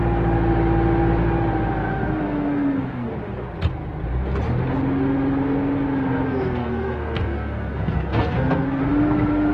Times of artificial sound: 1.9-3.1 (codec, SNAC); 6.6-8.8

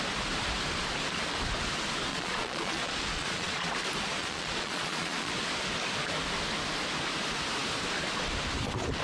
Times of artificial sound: 2.1-3.7 (vocoder, Vocos); 4.2-5.3

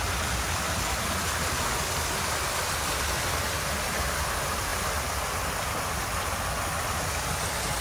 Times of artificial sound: none

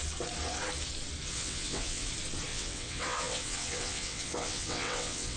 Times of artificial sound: 1.3-2.1 (vocoder, WaveNeXt); 2.5-5.4

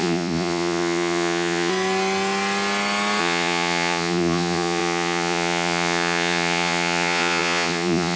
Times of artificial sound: 0.0-1.7 (vocoder, Vocos); 3.2-8.2